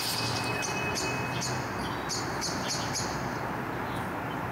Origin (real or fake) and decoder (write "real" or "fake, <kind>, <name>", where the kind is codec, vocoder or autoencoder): real